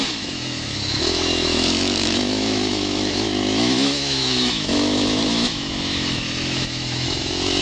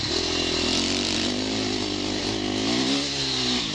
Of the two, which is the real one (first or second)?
second